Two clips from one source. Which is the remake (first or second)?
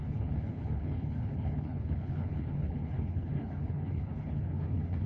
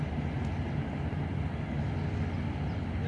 first